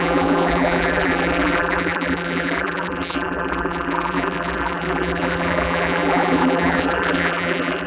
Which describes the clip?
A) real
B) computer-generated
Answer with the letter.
B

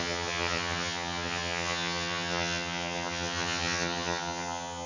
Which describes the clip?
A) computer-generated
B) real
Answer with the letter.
A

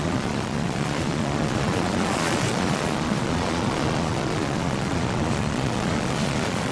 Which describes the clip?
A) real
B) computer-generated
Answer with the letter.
B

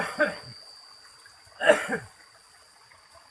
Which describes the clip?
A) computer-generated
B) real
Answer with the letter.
B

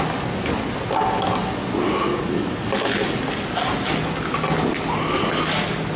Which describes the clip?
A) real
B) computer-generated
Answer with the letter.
A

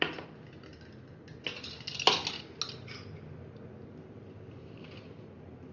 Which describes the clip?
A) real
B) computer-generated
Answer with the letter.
A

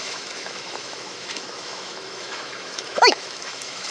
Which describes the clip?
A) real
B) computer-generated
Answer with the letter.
B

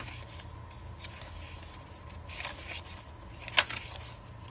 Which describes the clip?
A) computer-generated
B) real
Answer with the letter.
B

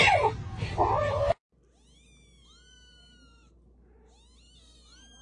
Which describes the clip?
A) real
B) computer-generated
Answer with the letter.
A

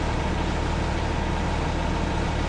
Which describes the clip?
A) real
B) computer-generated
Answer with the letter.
A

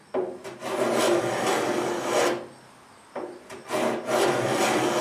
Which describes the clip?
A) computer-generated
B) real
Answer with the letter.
B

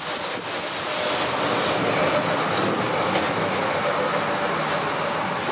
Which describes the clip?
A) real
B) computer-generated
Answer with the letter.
A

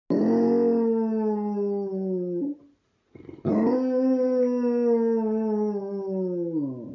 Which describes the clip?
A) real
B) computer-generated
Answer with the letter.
A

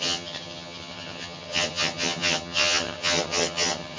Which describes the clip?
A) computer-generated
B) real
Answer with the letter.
A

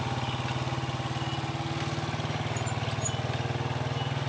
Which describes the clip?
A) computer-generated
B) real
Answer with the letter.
B